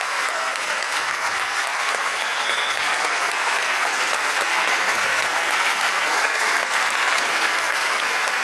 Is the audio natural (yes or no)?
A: no